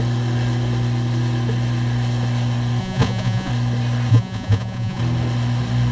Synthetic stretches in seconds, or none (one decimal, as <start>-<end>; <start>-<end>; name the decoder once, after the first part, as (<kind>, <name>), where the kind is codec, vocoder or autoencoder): 2.8-3.5 (vocoder, Vocos); 4.1-5.0